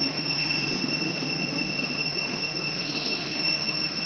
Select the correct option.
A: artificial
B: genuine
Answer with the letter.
A